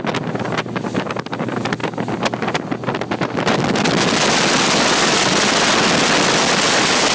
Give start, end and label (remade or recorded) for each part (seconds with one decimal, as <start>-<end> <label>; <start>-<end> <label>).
0.0-7.1 recorded

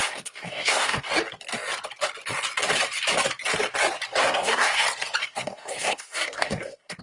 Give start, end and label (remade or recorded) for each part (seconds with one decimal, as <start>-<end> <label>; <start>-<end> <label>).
0.0-1.1 remade; 1.1-4.2 recorded; 4.2-4.8 remade; 4.8-5.2 recorded; 5.2-7.0 remade

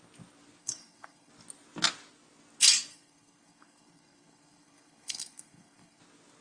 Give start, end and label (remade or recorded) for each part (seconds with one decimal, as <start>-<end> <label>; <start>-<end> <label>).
0.0-0.6 recorded; 0.6-1.3 remade; 1.3-2.9 recorded; 2.9-6.0 remade; 6.0-6.4 recorded

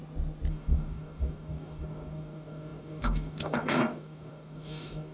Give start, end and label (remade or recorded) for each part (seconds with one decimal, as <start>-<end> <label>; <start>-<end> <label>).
0.0-0.5 recorded; 0.5-5.1 remade